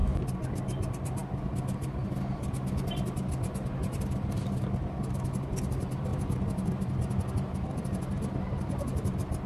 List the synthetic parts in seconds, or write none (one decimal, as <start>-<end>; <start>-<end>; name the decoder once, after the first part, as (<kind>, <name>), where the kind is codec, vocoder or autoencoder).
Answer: none